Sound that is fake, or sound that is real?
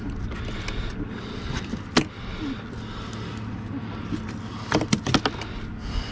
real